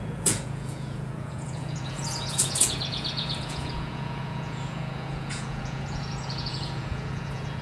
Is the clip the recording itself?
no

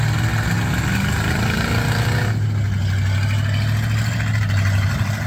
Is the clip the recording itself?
yes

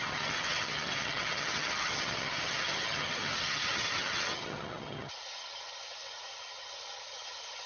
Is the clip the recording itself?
no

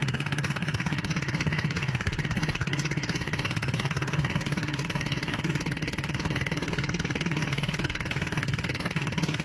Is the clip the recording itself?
no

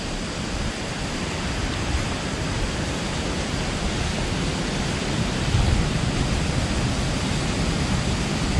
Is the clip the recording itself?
yes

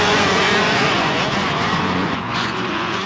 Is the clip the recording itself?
no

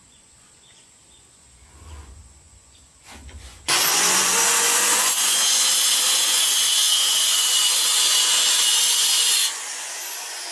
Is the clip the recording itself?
no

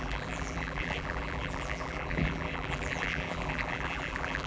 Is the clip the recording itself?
no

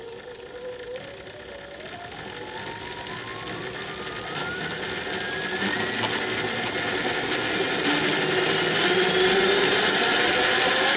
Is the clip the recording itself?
yes